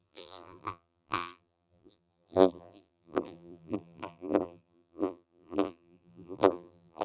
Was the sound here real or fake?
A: fake